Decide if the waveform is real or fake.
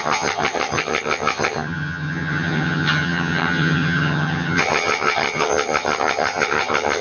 fake